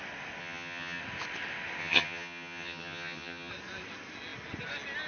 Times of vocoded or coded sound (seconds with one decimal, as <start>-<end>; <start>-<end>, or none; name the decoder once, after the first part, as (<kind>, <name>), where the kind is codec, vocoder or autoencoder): 0.4-1.0 (vocoder, HiFi-GAN); 1.8-3.5